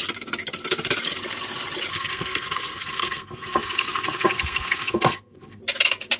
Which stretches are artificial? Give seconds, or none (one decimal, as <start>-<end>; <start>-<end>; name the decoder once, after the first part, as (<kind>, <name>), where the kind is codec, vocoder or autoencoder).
1.9-5.6 (codec, SNAC)